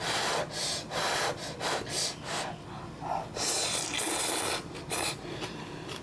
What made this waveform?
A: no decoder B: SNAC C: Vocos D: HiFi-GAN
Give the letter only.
A